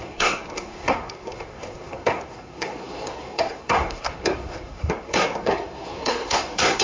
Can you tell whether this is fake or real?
fake